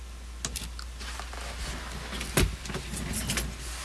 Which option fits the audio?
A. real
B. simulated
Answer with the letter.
A